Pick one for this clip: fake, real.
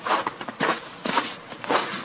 fake